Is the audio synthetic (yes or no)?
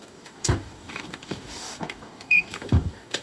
yes